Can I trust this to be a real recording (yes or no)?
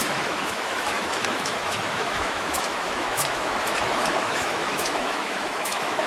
no